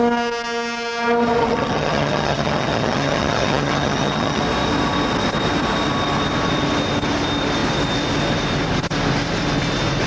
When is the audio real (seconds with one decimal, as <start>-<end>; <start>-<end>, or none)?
0.0-1.4; 4.4-10.1